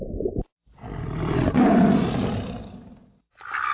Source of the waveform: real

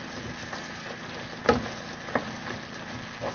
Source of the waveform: real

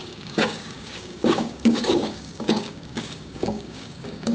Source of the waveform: fake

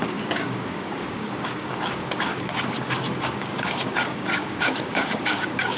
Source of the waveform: fake